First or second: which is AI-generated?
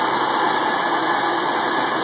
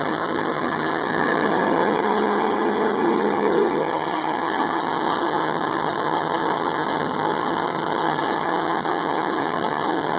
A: second